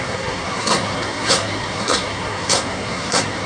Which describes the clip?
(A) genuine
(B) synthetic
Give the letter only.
B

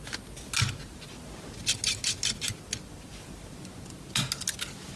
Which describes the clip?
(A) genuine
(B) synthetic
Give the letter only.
A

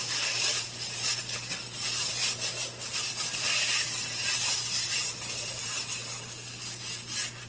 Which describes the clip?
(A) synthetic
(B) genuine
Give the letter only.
B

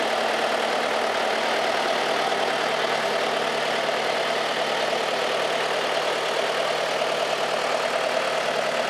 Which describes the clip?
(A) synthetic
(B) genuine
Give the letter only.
B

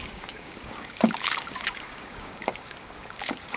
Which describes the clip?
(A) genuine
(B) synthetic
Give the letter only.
B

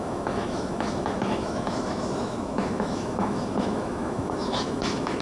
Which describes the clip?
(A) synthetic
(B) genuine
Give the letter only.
A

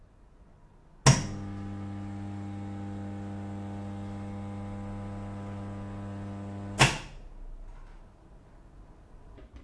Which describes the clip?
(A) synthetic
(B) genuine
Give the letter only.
B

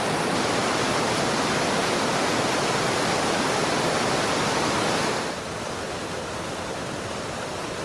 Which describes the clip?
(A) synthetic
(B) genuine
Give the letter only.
B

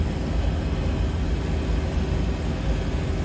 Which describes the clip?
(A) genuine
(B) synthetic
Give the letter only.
A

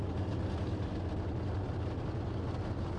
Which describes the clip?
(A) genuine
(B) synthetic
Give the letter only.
A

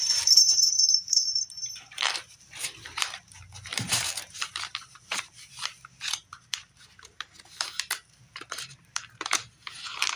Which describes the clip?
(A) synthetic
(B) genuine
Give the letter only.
A